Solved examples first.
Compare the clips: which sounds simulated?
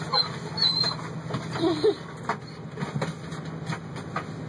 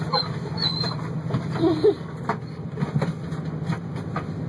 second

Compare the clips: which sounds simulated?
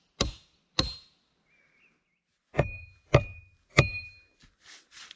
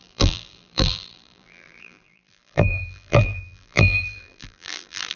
second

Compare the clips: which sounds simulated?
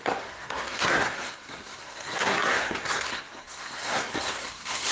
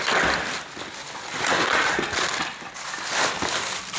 first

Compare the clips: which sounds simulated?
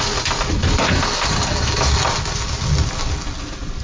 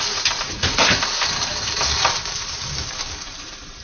second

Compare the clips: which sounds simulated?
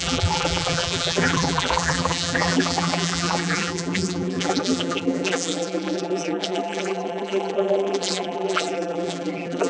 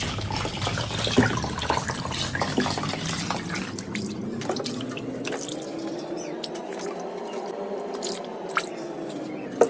first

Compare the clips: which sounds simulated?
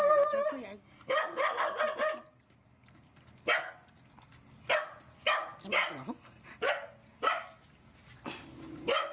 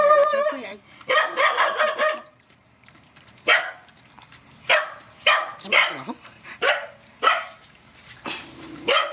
second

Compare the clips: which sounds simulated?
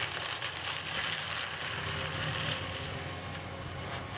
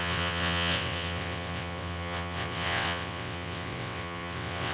second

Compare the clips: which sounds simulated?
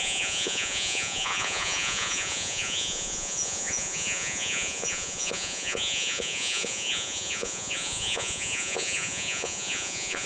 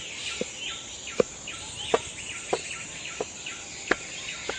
first